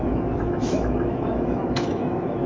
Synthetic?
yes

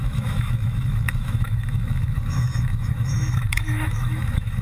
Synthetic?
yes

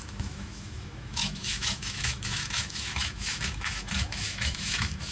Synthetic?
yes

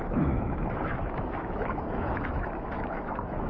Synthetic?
yes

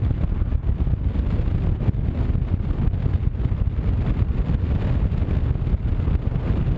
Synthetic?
no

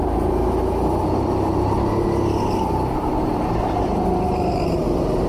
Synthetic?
no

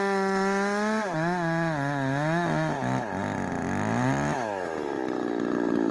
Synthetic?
no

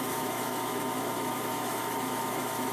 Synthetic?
yes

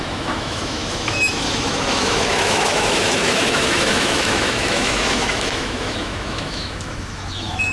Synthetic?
yes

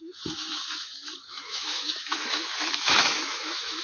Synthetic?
yes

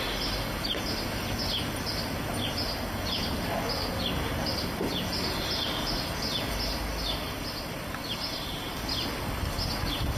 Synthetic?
no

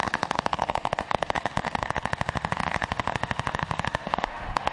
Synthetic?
yes